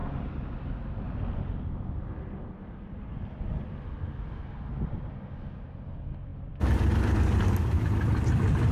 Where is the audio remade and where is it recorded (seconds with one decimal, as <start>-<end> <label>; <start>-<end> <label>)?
0.0-8.7 remade